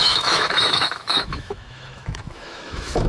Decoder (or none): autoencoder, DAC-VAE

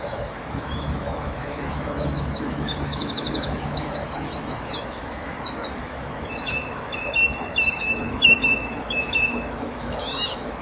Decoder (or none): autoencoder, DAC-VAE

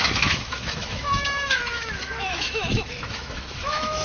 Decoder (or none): autoencoder, DAC-VAE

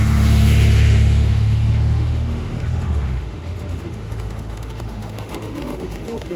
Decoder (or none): autoencoder, DAC-VAE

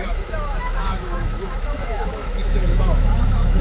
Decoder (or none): autoencoder, DAC-VAE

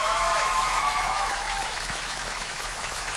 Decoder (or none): autoencoder, DAC-VAE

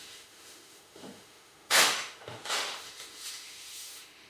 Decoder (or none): autoencoder, DAC-VAE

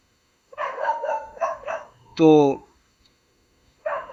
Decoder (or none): autoencoder, DAC-VAE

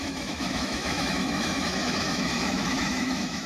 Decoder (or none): autoencoder, DAC-VAE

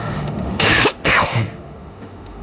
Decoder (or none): autoencoder, DAC-VAE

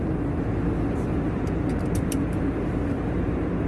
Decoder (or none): none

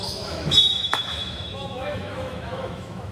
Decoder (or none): autoencoder, DAC-VAE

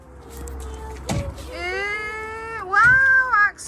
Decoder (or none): none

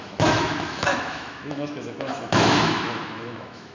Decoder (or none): autoencoder, DAC-VAE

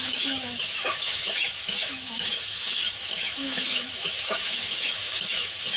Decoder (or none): autoencoder, DAC-VAE